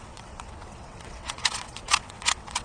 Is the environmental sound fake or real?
fake